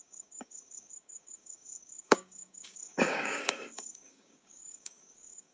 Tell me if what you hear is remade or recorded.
remade